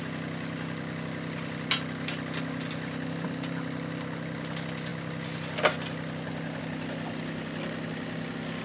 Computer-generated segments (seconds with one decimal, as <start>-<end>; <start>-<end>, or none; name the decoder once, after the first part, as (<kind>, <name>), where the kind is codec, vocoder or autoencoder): none